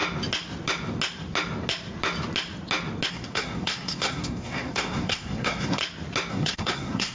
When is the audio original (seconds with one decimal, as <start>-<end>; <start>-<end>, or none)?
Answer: 0.0-3.1; 5.8-6.3